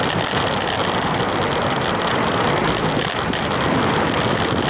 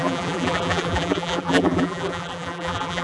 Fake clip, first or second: second